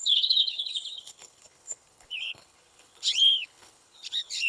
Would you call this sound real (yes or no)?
no